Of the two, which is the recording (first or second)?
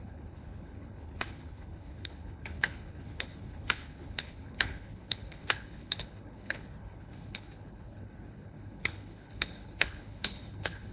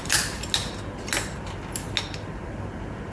second